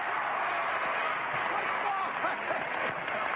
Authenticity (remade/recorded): recorded